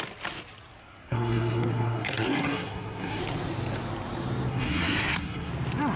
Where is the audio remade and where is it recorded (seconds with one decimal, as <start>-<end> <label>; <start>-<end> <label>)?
0.0-0.8 recorded; 0.8-3.2 remade; 3.2-4.5 recorded; 4.5-5.5 remade; 5.5-6.0 recorded